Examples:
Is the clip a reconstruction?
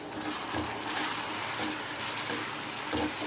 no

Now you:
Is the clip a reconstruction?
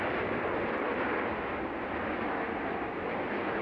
no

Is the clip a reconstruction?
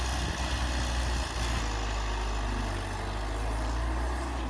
no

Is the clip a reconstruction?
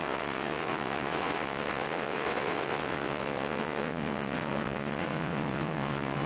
yes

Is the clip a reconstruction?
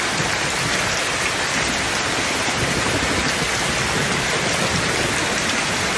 no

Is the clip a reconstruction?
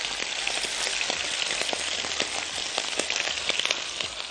no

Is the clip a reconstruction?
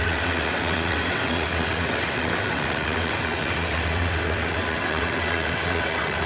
yes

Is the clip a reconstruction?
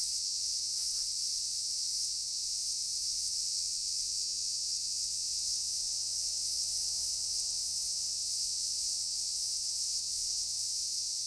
yes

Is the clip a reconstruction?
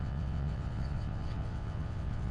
yes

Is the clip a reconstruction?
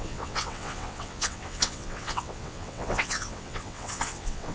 yes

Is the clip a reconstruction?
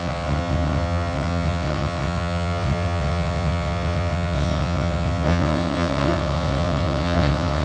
yes